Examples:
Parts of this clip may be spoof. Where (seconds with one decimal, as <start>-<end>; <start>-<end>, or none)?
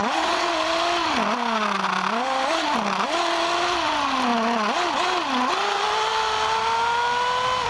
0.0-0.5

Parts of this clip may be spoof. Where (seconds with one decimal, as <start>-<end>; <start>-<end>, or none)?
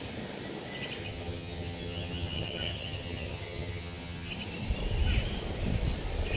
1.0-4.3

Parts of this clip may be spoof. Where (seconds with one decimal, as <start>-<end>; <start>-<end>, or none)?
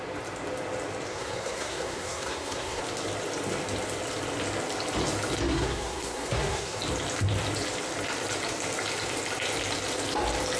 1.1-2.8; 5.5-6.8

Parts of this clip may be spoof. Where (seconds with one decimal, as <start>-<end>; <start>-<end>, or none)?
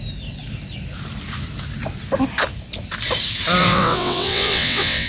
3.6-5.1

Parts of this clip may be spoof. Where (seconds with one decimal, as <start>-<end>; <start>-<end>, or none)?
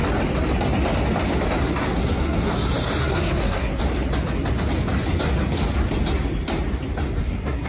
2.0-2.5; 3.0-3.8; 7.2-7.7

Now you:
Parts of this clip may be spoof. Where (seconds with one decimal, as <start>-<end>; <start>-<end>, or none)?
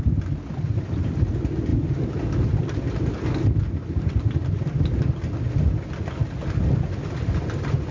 none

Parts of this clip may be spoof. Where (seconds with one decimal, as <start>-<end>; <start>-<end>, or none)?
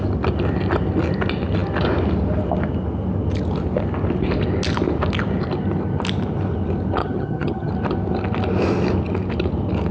7.0-7.7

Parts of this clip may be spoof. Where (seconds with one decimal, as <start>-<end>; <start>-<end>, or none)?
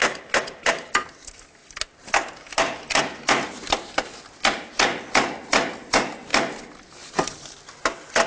none